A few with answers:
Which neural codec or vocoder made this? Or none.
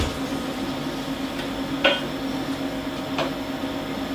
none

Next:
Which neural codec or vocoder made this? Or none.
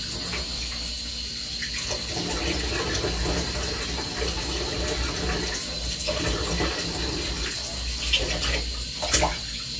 none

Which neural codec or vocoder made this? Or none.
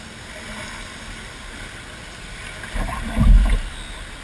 none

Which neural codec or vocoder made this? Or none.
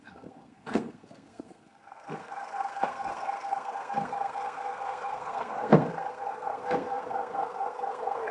codec, SNAC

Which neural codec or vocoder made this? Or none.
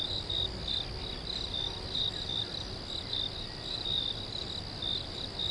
none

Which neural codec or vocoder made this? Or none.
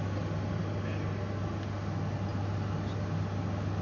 none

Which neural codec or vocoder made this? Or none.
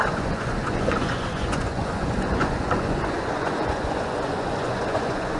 vocoder, Vocos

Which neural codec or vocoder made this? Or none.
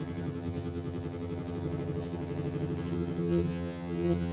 vocoder, HiFi-GAN